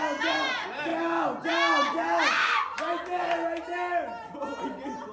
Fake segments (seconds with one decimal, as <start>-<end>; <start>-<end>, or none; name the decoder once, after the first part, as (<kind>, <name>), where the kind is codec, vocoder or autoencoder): none